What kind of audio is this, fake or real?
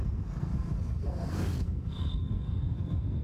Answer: fake